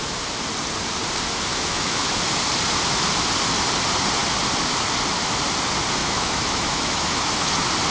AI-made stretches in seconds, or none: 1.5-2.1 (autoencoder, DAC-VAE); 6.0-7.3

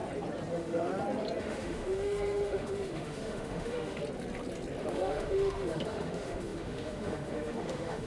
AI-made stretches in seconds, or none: 0.5-0.9 (autoencoder, DAC-VAE); 1.4-4.0; 4.8-8.1

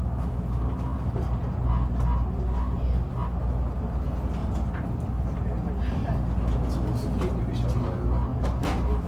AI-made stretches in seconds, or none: 8.3-9.1 (autoencoder, DAC-VAE)

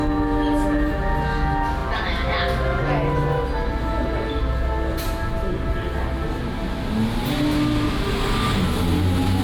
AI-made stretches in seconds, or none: none